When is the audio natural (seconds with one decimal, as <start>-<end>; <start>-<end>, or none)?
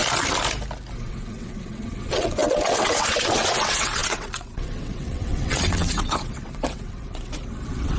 0.0-1.0